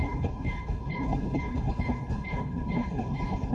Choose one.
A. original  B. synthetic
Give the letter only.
B